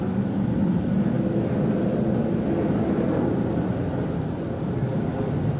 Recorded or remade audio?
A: remade